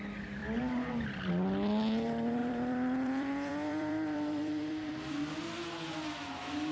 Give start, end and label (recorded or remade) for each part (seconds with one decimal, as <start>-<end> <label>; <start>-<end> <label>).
0.0-0.4 recorded; 0.4-1.3 remade; 1.3-2.4 recorded; 2.4-4.9 remade; 4.9-6.7 recorded